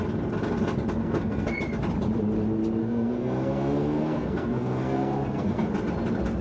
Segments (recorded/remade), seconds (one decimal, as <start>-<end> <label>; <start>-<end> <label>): 0.0-1.0 recorded; 1.0-1.6 remade; 1.6-2.8 recorded; 2.8-5.7 remade; 5.7-6.4 recorded